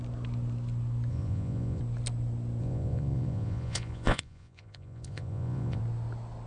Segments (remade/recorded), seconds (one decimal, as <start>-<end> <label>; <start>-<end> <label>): 0.0-1.1 recorded; 1.1-1.8 remade; 1.8-2.6 recorded; 2.6-5.8 remade; 5.8-6.5 recorded